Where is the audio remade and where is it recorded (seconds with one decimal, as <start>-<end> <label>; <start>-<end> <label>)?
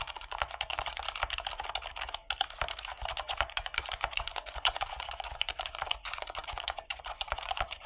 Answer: 0.0-1.0 remade; 1.0-3.1 recorded; 3.1-7.9 remade